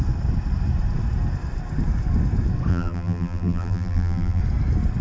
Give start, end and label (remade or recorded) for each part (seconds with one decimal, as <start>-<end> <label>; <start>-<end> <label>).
0.0-2.7 recorded; 2.7-4.4 remade; 4.4-5.0 recorded